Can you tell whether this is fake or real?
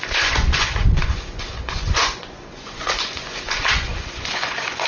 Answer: fake